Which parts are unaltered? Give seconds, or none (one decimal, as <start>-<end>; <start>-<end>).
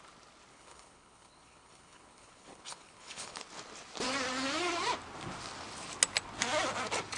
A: 0.0-0.5; 3.4-7.2